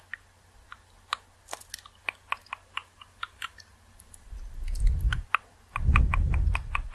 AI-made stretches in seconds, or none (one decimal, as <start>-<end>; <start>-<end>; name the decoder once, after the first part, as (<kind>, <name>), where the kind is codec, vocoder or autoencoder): none